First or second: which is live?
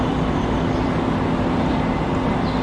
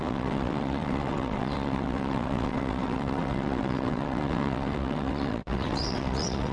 first